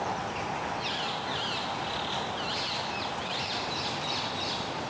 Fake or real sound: real